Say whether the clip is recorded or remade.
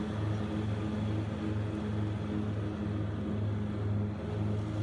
recorded